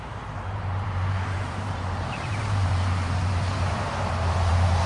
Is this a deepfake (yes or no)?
yes